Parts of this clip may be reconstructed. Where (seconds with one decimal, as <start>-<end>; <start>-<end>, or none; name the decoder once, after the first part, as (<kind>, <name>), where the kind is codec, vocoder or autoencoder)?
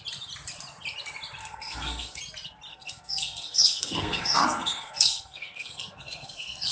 1.4-2.2 (codec, SNAC); 2.7-6.7